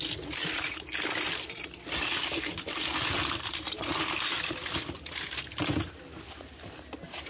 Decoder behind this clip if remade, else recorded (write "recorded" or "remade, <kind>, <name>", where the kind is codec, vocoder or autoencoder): recorded